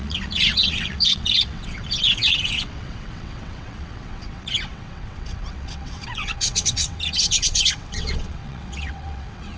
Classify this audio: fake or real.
fake